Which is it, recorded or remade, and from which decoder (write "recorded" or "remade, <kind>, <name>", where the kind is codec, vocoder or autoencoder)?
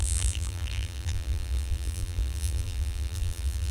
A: remade, vocoder, BigVGAN v2